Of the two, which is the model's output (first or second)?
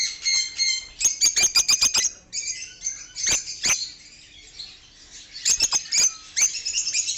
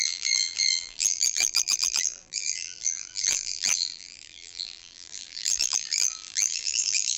second